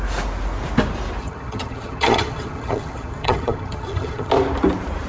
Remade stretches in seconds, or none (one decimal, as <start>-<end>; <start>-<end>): 1.2-4.3